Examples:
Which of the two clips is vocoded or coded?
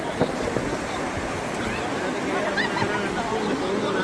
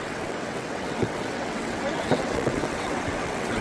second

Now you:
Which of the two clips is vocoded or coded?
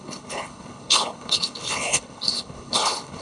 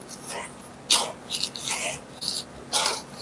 first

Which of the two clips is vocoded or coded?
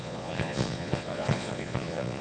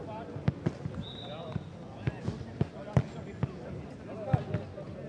first